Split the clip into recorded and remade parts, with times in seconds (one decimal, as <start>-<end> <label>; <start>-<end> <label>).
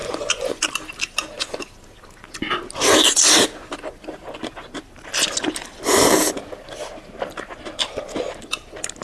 0.0-0.6 remade; 0.6-9.0 recorded